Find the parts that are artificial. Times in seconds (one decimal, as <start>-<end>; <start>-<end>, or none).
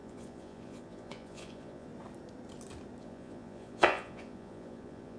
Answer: 0.0-1.9; 3.0-5.2